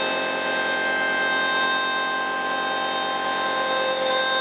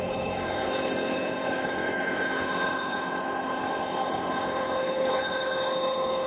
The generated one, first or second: second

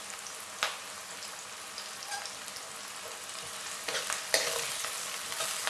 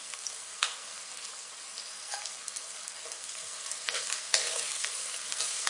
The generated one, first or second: second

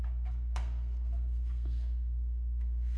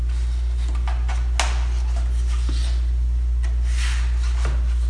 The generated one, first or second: first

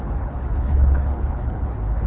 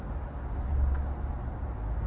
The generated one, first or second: first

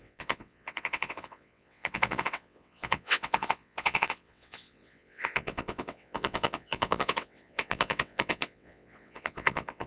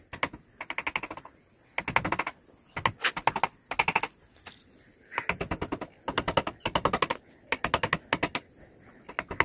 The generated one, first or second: first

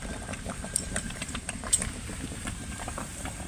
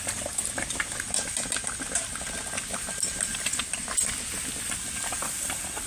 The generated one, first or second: first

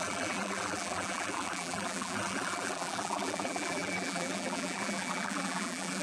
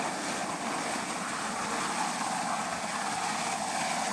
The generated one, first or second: first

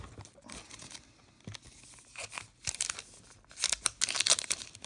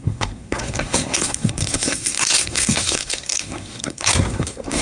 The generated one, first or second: second